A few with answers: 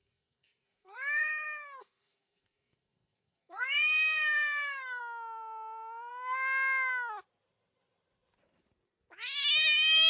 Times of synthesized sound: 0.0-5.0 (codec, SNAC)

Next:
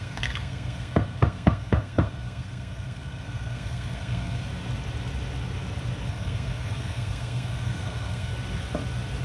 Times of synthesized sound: 0.0-4.5 (codec, SNAC); 6.1-8.3

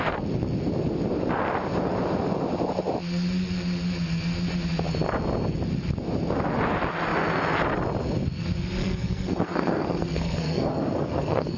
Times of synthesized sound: 8.8-11.6 (codec, SNAC)

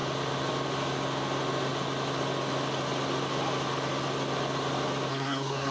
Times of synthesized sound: 5.1-5.7 (codec, SNAC)

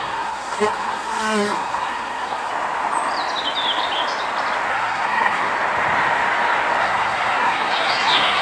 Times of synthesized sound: 0.0-2.5 (codec, SNAC); 4.7-5.5; 6.8-8.4